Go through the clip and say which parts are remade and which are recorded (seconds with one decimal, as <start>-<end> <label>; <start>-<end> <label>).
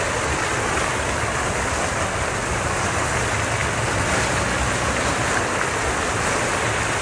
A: 0.0-7.0 recorded